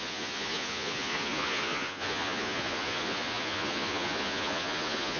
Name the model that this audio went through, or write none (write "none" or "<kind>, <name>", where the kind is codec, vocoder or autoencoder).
vocoder, Vocos